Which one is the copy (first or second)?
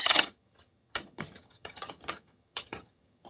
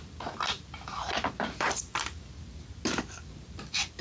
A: first